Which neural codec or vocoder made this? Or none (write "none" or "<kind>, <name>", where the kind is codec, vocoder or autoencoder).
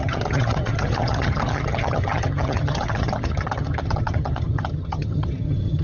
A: vocoder, HiFi-GAN